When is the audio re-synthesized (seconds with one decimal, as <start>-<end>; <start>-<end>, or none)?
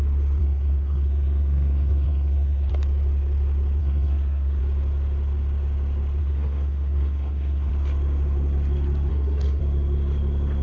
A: 0.4-2.7; 3.8-4.6; 6.2-7.7; 9.1-9.6